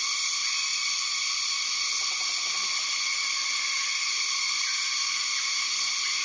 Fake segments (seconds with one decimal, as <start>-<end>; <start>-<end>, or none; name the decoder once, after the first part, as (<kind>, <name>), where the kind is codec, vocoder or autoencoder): none